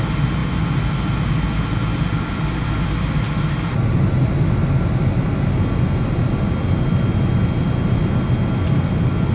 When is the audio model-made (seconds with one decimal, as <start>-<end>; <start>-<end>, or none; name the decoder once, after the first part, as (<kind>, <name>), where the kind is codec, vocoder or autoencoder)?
none